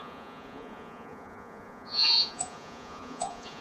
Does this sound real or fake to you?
fake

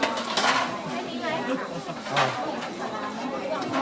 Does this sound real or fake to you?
real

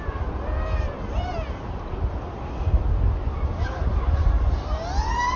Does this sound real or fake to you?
real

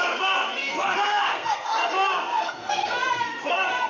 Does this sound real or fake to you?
fake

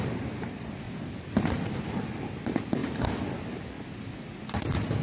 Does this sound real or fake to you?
real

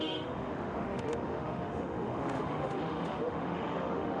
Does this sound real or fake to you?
fake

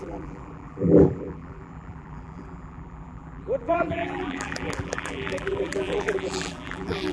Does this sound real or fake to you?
fake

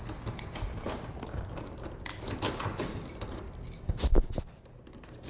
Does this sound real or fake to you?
real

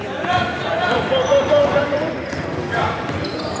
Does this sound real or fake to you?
fake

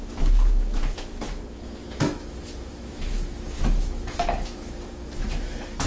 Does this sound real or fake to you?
fake